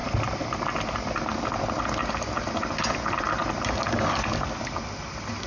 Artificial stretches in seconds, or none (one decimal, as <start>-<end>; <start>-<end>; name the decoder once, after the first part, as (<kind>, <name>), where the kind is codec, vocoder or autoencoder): none